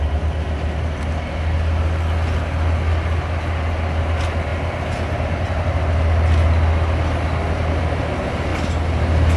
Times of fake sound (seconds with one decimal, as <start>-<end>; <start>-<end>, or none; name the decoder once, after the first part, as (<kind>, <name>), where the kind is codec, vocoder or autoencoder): none